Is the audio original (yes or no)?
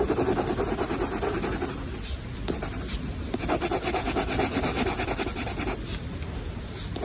yes